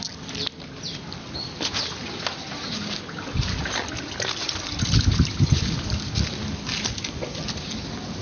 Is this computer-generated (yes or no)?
no